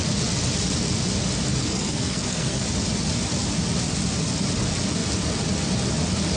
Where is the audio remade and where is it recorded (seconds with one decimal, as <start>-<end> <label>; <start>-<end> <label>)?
0.0-1.6 recorded; 1.6-2.6 remade; 2.6-6.4 recorded